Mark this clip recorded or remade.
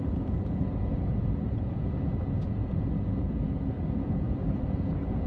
remade